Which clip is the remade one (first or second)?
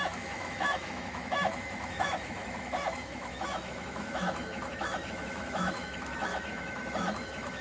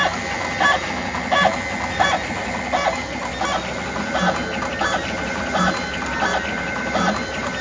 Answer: first